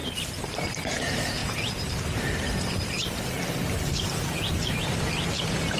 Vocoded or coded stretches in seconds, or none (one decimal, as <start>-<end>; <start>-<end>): 0.0-1.4; 4.9-5.8